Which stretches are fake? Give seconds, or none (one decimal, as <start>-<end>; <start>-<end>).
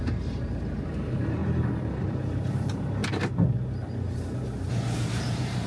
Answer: 0.0-1.4; 2.0-3.0; 4.7-5.7